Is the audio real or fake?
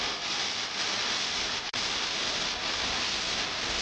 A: real